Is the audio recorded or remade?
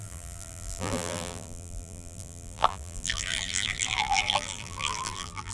remade